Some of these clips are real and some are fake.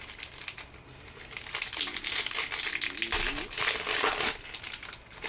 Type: real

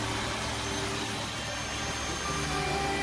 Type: real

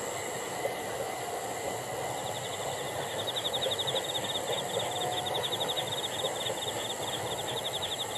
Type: real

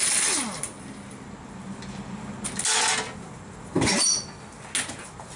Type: real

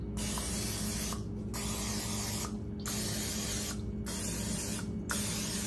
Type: real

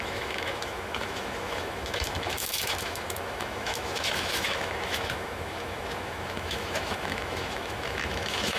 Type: fake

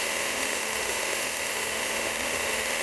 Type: fake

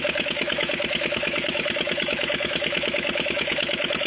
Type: fake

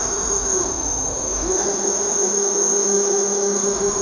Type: fake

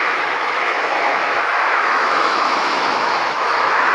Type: fake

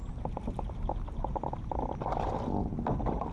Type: real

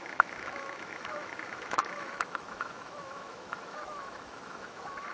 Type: fake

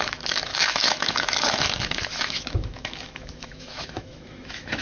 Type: fake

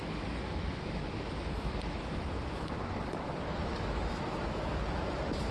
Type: fake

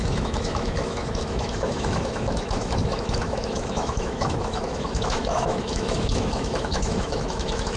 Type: fake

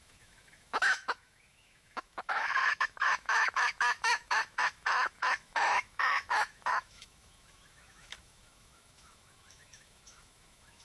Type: fake